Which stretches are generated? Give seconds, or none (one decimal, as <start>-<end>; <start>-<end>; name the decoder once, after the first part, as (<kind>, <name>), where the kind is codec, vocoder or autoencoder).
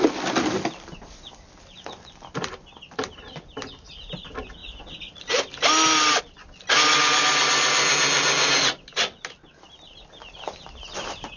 none